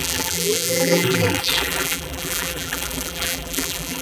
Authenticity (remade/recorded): remade